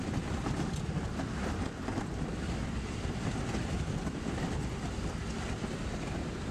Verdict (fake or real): real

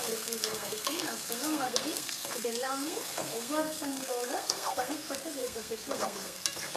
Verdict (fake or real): fake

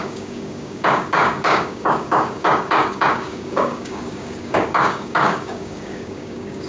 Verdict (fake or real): fake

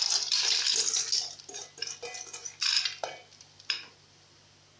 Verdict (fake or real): real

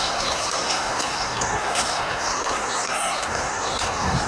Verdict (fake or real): fake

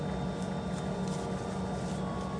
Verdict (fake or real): real